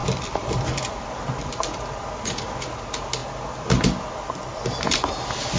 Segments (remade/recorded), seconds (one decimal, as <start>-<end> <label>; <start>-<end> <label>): 0.0-2.6 remade; 2.6-5.6 recorded